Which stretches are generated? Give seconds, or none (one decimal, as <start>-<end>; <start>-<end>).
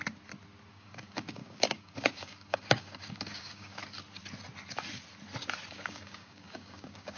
0.7-3.8; 5.7-7.2